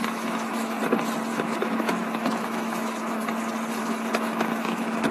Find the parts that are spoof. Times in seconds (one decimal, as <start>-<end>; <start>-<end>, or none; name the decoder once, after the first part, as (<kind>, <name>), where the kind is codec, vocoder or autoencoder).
0.0-0.8 (autoencoder, DAC-VAE); 1.3-3.2; 3.8-5.1